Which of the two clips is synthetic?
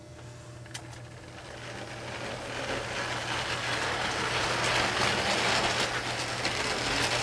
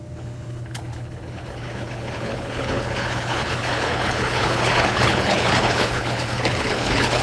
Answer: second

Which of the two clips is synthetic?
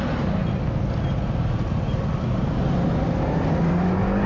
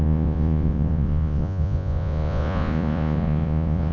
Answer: second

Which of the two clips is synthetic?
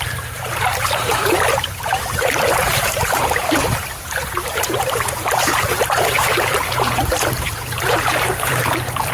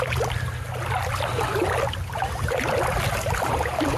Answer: first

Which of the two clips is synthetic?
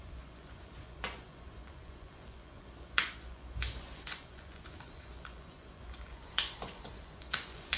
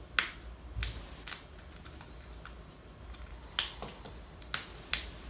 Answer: first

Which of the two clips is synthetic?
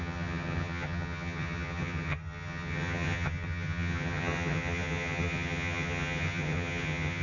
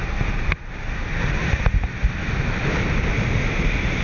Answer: first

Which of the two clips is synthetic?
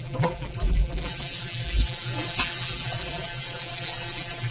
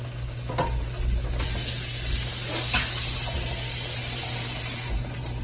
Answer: first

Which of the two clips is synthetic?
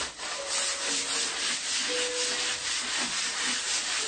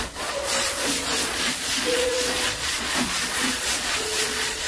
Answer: second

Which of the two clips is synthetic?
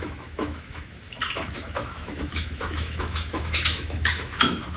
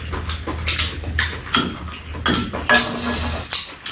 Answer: first